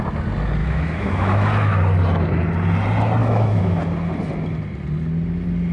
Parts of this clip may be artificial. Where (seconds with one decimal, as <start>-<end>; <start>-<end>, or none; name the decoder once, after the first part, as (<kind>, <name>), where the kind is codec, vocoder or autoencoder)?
0.6-1.8 (autoencoder, DAC-VAE); 3.2-3.8